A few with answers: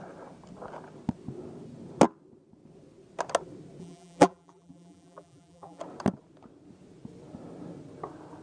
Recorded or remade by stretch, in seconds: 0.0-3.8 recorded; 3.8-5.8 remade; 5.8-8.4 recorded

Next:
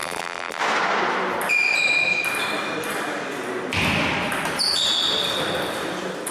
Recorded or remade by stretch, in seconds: 0.0-0.6 remade; 0.6-6.3 recorded

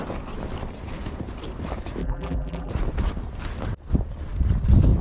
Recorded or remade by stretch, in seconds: 0.0-2.0 recorded; 2.0-2.7 remade; 2.7-5.0 recorded